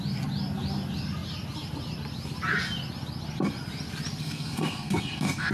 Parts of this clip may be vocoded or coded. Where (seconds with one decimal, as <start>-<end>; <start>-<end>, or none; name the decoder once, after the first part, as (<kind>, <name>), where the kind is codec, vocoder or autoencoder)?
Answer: 4.2-5.5 (codec, SNAC)